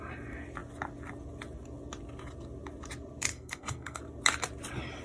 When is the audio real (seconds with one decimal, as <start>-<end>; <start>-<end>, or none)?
0.0-3.3; 4.0-5.0